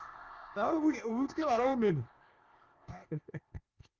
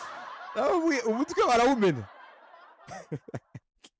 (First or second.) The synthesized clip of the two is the first